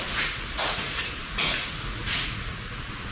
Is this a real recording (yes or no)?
no